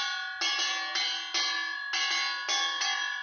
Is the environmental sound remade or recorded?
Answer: recorded